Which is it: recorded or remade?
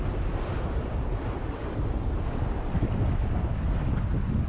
recorded